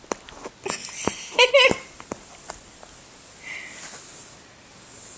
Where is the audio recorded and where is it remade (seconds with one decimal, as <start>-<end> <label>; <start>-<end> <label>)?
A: 0.0-0.8 recorded; 0.8-1.5 remade; 1.5-5.2 recorded